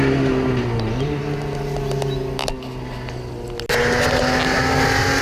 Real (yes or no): yes